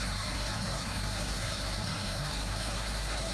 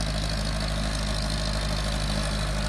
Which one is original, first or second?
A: second